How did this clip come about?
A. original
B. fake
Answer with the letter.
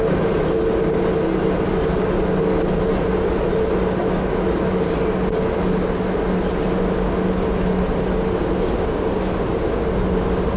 A